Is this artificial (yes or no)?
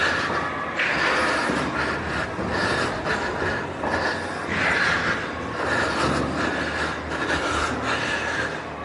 no